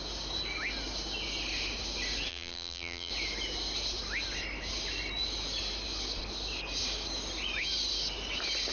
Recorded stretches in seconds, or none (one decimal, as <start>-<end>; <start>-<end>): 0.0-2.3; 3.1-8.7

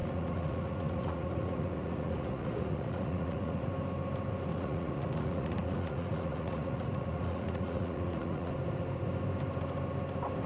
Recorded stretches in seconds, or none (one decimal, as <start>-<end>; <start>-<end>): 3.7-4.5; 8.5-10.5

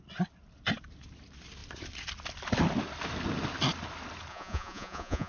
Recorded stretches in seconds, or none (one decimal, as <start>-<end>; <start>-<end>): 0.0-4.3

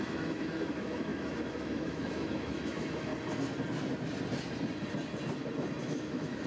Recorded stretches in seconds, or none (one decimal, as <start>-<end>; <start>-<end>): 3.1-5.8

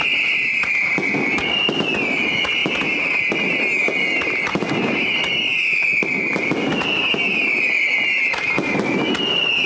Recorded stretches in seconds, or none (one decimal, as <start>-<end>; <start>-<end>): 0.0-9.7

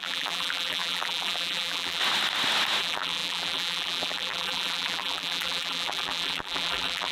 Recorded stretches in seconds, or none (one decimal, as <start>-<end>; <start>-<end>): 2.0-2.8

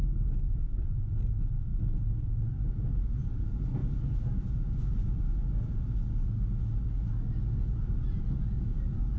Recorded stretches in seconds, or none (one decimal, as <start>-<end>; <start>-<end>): 0.0-9.2